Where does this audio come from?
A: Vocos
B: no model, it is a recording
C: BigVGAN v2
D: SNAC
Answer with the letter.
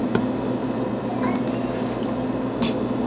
B